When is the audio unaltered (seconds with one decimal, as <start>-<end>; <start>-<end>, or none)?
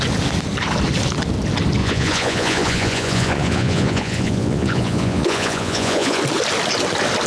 0.0-1.8; 6.2-7.3